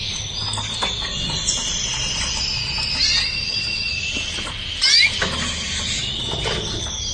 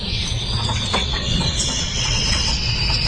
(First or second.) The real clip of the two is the first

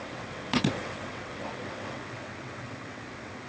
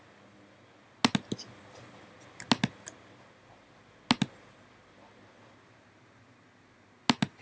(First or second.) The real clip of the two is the second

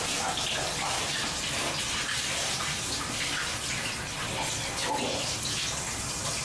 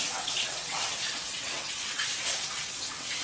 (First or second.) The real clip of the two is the first